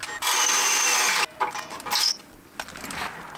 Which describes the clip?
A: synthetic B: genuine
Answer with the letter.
B